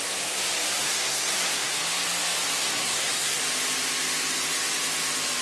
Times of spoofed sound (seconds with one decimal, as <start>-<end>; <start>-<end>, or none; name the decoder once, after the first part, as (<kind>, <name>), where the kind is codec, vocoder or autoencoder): 0.8-1.8 (codec, SNAC); 2.6-3.4